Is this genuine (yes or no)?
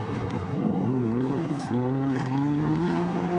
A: no